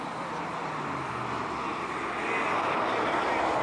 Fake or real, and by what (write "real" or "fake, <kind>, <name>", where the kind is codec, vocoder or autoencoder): real